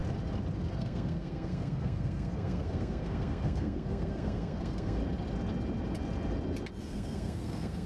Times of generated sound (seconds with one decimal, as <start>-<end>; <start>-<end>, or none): 0.7-5.0; 6.8-7.9